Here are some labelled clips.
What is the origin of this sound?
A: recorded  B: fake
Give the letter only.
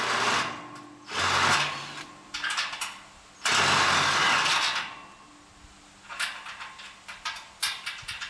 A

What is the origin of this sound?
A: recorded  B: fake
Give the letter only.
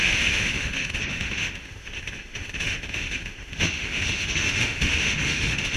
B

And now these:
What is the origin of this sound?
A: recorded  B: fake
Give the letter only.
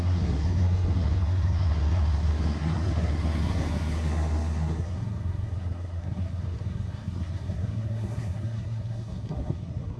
B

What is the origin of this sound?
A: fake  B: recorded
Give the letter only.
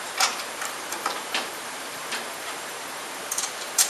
A